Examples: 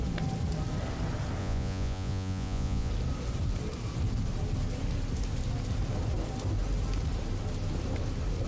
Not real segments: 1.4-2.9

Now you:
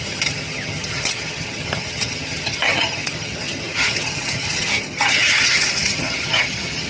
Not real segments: 0.0-6.9